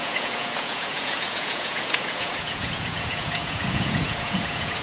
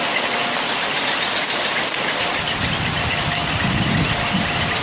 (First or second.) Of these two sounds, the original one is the second